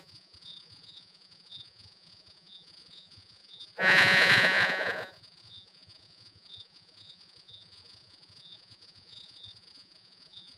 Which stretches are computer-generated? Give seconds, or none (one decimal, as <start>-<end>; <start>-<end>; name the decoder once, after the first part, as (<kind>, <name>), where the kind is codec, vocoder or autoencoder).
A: 0.0-10.6 (vocoder, Vocos)